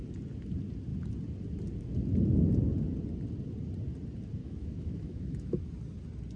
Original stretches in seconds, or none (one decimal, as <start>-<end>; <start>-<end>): 0.0-4.4; 5.6-6.4